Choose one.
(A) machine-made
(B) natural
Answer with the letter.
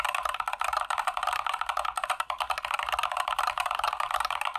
B